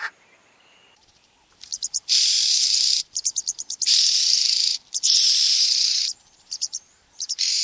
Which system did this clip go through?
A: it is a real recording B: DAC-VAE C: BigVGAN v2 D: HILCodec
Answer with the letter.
C